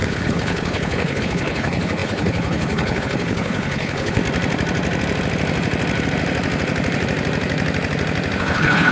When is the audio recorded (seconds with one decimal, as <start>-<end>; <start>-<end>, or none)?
4.2-8.4